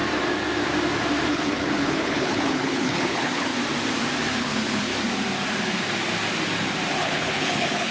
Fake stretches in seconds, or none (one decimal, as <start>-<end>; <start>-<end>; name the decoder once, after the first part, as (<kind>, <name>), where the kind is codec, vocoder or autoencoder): 1.3-3.5 (codec, HILCodec); 4.4-4.9; 6.9-7.9